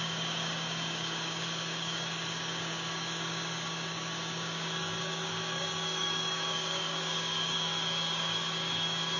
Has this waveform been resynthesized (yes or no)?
yes